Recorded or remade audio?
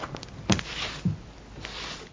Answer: recorded